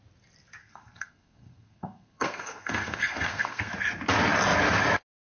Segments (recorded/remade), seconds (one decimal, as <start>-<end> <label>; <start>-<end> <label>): 0.0-0.6 recorded; 0.6-3.7 remade; 3.7-5.2 recorded